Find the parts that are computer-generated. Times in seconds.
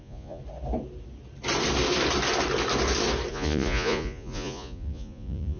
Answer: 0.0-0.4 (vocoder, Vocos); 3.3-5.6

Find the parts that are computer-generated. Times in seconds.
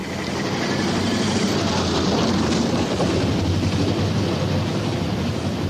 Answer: none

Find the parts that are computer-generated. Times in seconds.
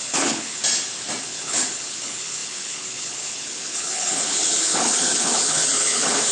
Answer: 0.0-0.6 (codec, HILCodec); 1.2-6.3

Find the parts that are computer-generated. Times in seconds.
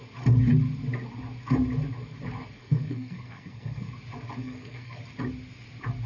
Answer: 2.6-3.9 (codec, SNAC); 4.4-5.0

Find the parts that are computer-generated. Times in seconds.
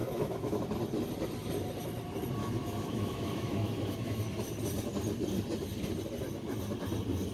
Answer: 0.0-0.6 (autoencoder, DAC-VAE); 2.4-4.2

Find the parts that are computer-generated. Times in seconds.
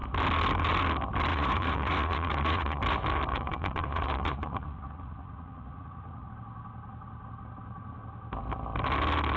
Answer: 1.3-2.8 (vocoder, Vocos); 3.3-6.3